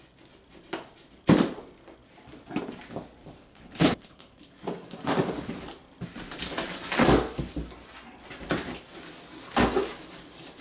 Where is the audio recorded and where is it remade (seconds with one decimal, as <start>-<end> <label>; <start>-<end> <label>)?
0.0-3.4 recorded; 3.4-4.4 remade; 4.4-10.6 recorded